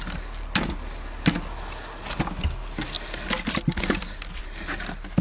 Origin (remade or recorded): recorded